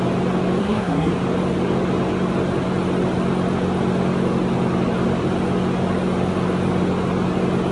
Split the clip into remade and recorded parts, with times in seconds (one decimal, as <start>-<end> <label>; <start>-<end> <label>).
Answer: 0.0-0.6 recorded; 0.6-1.1 remade; 1.1-7.7 recorded